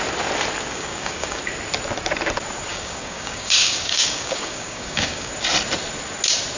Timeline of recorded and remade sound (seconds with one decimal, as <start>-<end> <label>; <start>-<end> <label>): 0.0-0.7 recorded; 0.7-1.4 remade; 1.4-2.7 recorded; 2.7-5.3 remade; 5.3-6.6 recorded